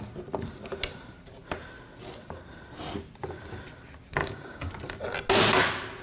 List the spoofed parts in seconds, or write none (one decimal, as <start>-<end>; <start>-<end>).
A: 4.2-4.7